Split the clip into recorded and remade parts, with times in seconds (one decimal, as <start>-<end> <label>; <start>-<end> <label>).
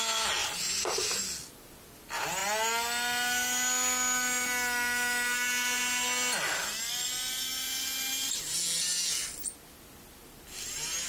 0.0-0.4 recorded; 0.4-1.2 remade; 1.2-11.1 recorded